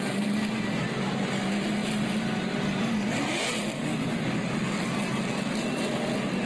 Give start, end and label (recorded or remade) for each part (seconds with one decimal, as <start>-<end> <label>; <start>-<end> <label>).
0.0-6.5 recorded